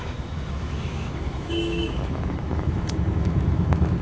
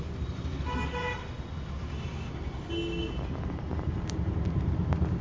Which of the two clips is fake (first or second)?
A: first